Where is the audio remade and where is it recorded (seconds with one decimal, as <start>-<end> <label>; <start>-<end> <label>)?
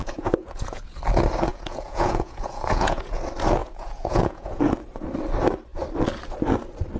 0.0-0.8 remade; 0.8-1.5 recorded; 1.5-3.2 remade; 3.2-3.6 recorded; 3.6-4.6 remade; 4.6-7.0 recorded